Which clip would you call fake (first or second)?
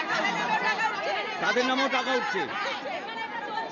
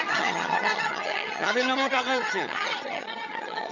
second